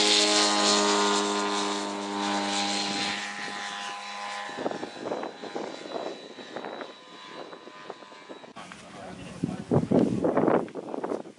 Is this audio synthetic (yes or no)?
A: no